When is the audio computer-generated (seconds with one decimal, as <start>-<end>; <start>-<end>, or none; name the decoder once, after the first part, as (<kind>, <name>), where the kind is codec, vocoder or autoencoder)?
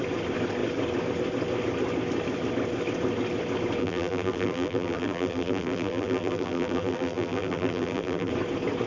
3.8-8.3 (vocoder, BigVGAN v2)